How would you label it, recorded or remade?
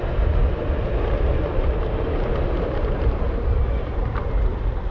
recorded